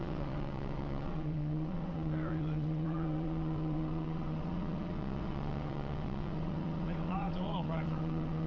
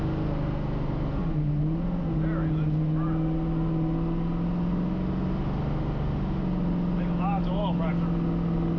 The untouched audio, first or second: second